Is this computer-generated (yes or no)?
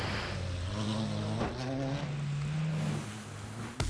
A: no